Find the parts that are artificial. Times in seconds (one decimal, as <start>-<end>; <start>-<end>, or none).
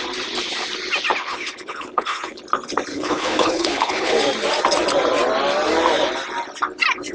1.2-2.4; 2.9-4.1